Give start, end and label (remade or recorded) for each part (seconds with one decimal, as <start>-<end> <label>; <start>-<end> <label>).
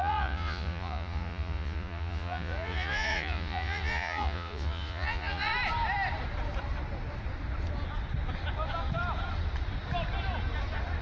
0.0-5.5 remade; 5.5-11.0 recorded